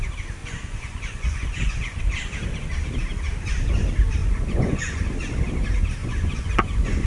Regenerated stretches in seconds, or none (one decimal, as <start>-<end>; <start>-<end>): 0.4-2.0; 4.2-5.0; 6.0-7.1